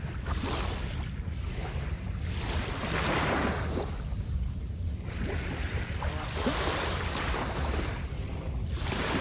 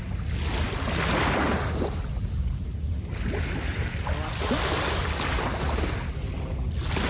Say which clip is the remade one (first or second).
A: first